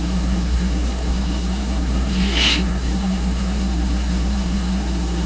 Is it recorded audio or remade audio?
remade